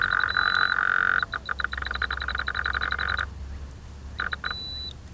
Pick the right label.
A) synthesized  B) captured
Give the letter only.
B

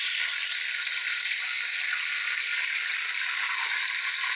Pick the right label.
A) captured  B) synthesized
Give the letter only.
A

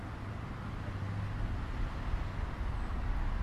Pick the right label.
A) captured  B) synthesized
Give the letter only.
A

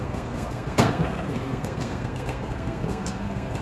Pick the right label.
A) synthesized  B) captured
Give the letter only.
A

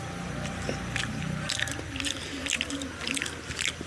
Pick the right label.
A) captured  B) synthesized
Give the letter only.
A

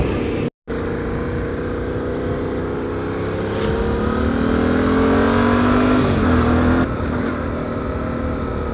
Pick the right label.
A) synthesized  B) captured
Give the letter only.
B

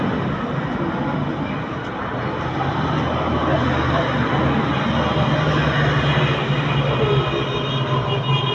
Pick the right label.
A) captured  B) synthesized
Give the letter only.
A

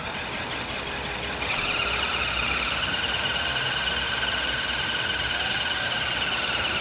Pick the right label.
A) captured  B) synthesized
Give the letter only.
A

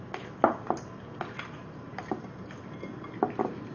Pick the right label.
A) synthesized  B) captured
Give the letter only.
B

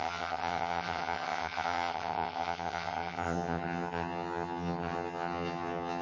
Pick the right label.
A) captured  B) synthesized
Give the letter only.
B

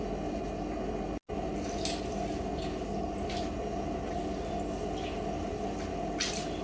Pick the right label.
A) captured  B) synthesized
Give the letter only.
A